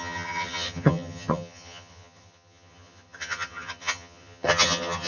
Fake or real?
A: fake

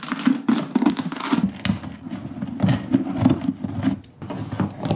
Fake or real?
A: real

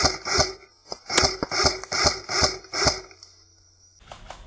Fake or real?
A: real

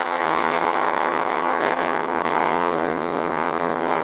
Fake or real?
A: fake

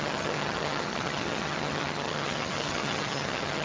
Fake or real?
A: fake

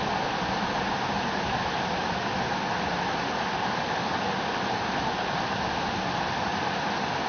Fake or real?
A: real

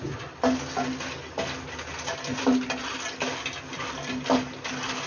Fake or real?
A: real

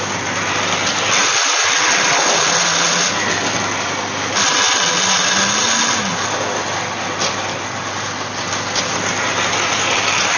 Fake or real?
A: real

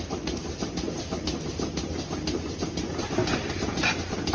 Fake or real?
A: real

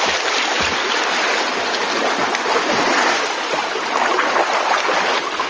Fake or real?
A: real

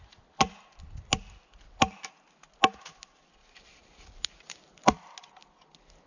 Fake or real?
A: real